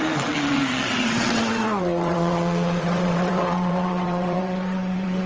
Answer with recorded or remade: remade